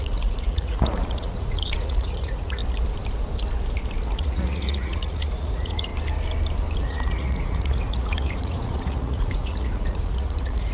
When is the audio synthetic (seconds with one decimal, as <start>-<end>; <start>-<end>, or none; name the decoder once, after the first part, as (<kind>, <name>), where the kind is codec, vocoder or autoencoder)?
0.0-2.6 (vocoder, Vocos); 4.1-5.9; 6.8-10.7